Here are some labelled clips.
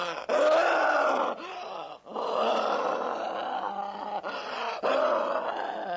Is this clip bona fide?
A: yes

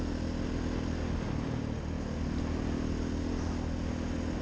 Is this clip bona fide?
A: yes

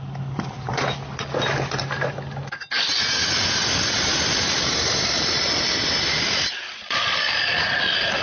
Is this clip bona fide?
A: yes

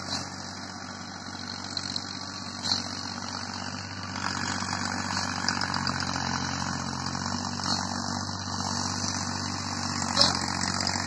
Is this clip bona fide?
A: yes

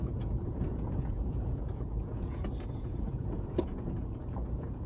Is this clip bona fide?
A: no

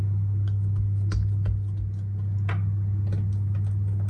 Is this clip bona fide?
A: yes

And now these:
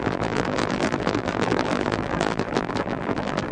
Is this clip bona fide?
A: no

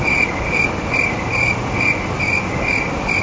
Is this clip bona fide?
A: yes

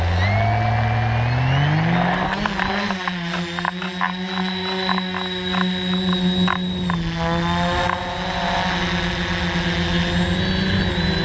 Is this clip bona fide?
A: yes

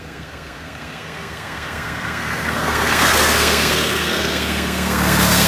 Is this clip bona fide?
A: no